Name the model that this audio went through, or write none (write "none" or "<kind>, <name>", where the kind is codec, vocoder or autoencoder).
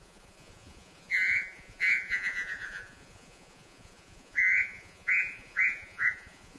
vocoder, Vocos